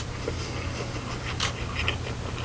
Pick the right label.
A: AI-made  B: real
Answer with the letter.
B